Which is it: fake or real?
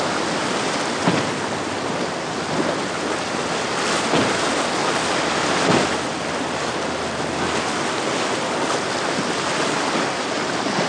real